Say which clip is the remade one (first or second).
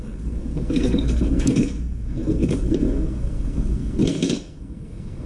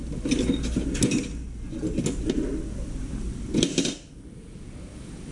first